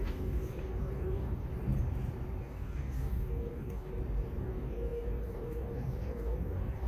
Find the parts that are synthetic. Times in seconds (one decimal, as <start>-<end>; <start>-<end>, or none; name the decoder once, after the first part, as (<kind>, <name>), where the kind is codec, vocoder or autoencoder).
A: 0.0-1.5 (codec, DAC); 2.4-3.9; 4.4-6.9